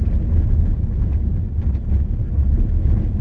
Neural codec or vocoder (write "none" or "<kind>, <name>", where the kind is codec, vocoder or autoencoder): none